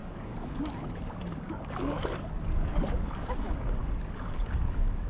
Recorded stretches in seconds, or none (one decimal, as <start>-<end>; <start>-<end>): none